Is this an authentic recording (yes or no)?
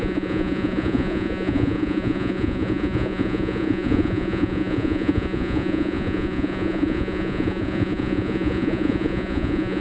no